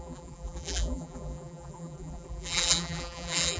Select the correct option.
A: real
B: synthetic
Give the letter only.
B